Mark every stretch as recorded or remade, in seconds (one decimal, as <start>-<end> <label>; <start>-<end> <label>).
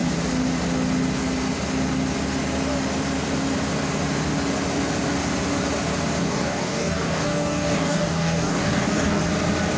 0.0-6.2 recorded; 6.2-9.2 remade; 9.2-9.8 recorded